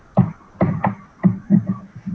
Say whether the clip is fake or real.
fake